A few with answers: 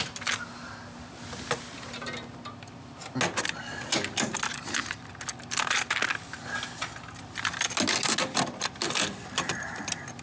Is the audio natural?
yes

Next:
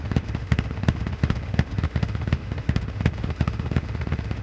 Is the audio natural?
no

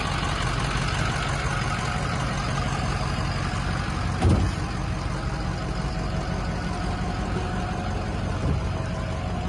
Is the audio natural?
yes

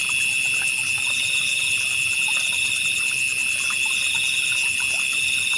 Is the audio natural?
yes